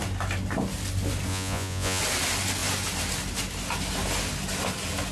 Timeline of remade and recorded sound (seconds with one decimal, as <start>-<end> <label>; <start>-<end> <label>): 0.0-1.3 recorded; 1.3-2.0 remade; 2.0-5.1 recorded